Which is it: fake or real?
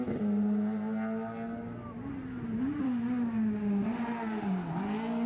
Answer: real